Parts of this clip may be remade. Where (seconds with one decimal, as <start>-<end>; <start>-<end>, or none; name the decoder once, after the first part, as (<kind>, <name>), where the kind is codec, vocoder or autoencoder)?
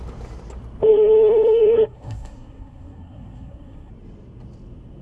0.9-3.9 (codec, SNAC)